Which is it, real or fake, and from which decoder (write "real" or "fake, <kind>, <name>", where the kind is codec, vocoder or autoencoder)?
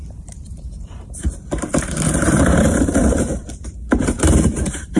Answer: fake, vocoder, BigVGAN v2